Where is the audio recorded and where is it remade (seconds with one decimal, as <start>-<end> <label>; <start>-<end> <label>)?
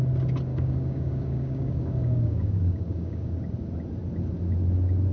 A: 0.0-0.5 recorded; 0.5-3.3 remade; 3.3-5.1 recorded